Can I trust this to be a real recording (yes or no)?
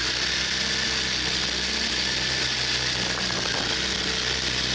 yes